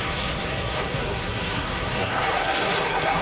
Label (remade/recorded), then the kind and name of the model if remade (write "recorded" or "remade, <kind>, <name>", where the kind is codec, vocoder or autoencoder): remade, codec, SNAC